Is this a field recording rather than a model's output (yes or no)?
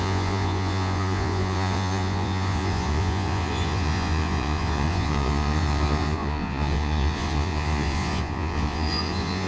no